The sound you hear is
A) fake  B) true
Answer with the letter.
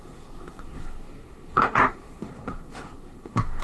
A